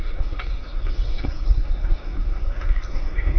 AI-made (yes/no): yes